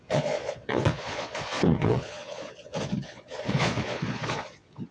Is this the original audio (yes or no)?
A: no